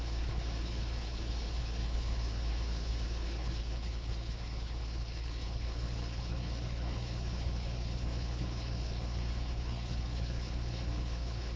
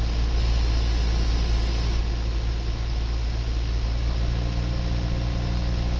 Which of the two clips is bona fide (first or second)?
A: second